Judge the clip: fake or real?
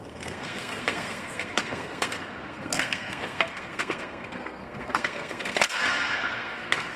fake